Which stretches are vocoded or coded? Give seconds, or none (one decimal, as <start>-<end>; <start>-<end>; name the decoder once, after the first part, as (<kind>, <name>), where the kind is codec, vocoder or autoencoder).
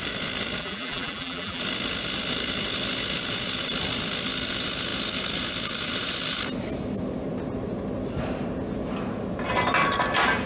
0.6-1.6 (vocoder, BigVGAN v2)